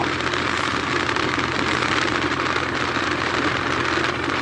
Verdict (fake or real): real